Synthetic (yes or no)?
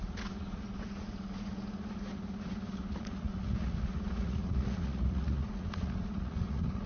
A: yes